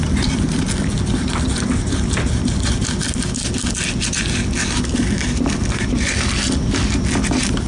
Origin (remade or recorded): recorded